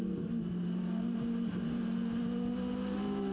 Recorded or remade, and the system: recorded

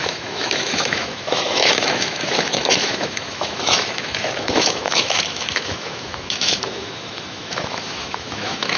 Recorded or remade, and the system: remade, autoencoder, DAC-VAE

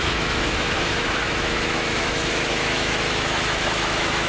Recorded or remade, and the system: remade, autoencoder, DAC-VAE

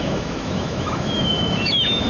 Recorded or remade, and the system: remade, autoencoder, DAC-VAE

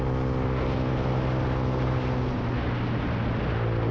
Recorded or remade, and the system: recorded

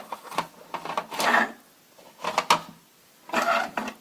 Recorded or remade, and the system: recorded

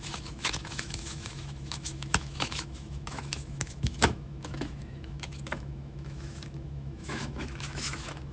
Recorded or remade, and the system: remade, autoencoder, DAC-VAE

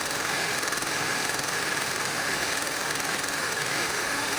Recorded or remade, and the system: remade, autoencoder, DAC-VAE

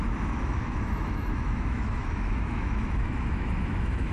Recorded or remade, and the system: remade, autoencoder, DAC-VAE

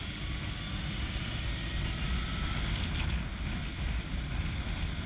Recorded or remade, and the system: recorded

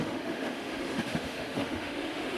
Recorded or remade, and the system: remade, autoencoder, DAC-VAE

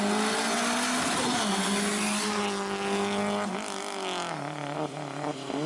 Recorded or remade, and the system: recorded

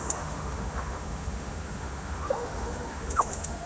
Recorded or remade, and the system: remade, autoencoder, DAC-VAE